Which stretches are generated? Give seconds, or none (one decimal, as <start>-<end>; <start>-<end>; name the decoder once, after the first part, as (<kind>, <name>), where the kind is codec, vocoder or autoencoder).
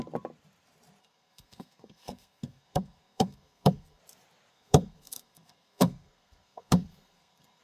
1.0-4.0 (codec, SNAC); 4.5-7.6